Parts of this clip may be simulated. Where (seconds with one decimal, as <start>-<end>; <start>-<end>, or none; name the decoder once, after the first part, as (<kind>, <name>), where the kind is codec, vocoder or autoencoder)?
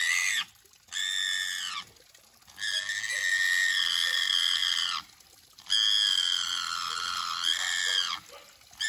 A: none